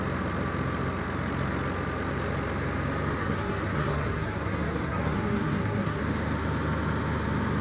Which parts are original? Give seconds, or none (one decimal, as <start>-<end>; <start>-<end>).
0.0-3.2; 6.0-7.6